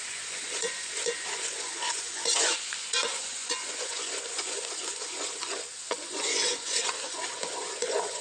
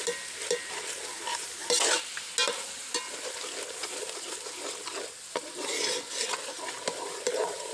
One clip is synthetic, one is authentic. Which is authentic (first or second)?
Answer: second